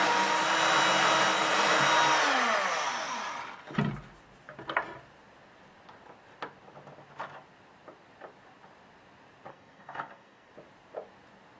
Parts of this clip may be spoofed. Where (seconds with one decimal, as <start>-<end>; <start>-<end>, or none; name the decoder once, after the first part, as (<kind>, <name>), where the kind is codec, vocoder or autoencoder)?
9.5-10.5 (codec, SNAC)

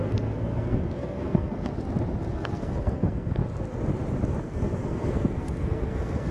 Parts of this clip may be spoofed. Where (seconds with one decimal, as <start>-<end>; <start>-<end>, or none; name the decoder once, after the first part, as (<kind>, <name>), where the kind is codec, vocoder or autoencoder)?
0.0-1.7 (codec, SNAC); 2.3-3.4; 4.4-6.3

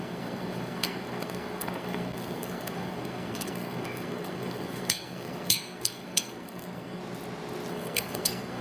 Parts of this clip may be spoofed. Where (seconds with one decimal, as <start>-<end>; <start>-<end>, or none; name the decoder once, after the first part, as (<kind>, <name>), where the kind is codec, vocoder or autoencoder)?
0.0-7.0 (codec, SNAC); 7.7-8.6